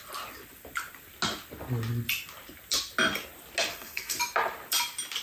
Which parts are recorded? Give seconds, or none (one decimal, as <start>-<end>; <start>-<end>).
0.0-3.7; 4.2-5.2